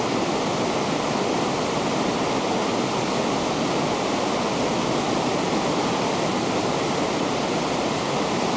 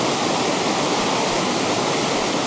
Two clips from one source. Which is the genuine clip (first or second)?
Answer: first